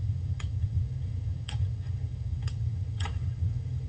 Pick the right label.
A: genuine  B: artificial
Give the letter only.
B